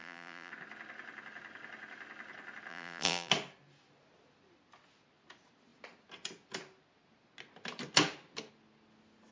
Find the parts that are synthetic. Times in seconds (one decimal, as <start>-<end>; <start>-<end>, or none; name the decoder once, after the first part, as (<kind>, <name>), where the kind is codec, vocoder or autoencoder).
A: 0.0-0.5 (vocoder, BigVGAN v2); 2.7-3.3